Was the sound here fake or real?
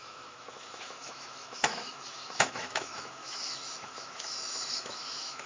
fake